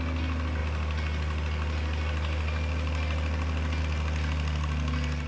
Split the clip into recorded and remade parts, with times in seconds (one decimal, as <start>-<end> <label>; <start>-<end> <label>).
0.0-5.3 recorded